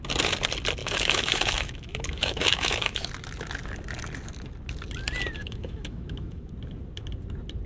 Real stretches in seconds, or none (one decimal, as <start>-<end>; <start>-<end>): 0.0-0.8; 3.1-5.4; 6.5-7.7